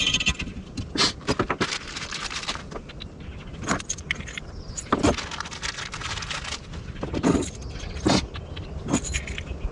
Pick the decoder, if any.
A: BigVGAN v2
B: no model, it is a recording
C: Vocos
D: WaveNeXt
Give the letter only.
B